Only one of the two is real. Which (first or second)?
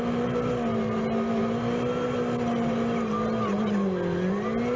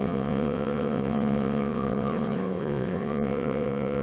first